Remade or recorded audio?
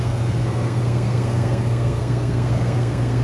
remade